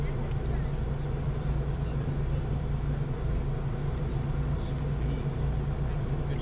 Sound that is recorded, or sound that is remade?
recorded